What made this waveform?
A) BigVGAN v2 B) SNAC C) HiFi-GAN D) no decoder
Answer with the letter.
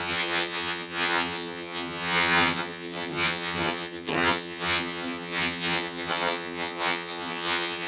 C